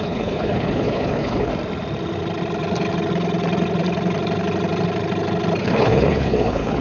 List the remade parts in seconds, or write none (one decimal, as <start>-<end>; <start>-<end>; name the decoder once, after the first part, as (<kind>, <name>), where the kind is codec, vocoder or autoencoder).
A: 0.0-1.5 (codec, HILCodec); 5.6-6.8